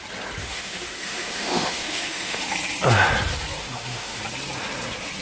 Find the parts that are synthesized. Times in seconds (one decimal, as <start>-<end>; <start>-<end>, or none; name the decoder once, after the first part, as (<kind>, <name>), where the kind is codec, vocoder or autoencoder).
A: 0.4-2.5 (autoencoder, DAC-VAE); 3.6-4.2